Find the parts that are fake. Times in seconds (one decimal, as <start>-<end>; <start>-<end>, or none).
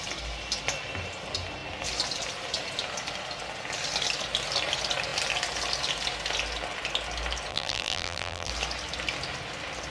7.5-8.5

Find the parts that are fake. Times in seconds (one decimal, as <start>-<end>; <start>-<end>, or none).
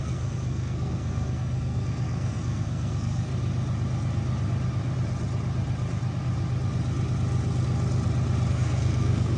0.0-3.3; 8.5-9.4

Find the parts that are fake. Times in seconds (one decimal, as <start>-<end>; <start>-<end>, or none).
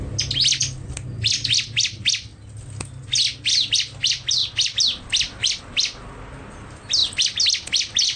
4.4-5.6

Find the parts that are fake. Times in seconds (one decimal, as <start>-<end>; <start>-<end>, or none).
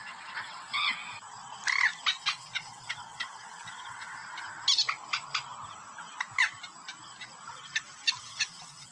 0.0-1.0; 2.2-4.2; 8.2-8.9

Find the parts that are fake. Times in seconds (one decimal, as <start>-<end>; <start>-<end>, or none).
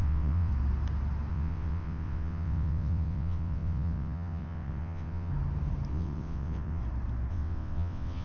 0.0-0.5; 1.3-5.3; 5.9-6.8; 7.3-8.2